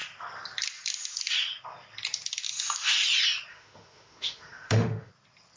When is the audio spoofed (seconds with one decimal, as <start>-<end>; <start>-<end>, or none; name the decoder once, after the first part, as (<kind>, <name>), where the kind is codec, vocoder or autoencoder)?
3.5-5.1 (autoencoder, DAC-VAE)